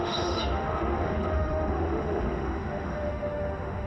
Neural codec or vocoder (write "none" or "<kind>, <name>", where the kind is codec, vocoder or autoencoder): autoencoder, DAC-VAE